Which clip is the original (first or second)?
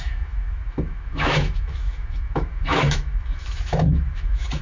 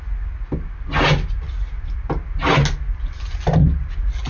second